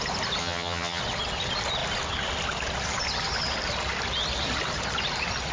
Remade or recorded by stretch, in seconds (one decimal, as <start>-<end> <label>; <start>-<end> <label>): 0.0-0.4 recorded; 0.4-1.0 remade; 1.0-5.5 recorded